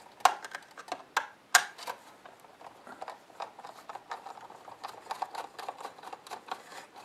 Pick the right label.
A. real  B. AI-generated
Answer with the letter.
A